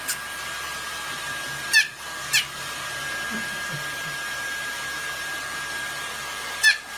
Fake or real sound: real